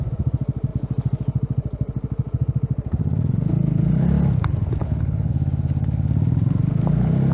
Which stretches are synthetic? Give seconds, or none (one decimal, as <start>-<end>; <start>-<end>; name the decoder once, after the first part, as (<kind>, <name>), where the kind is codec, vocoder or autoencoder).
4.8-5.3 (codec, HILCodec)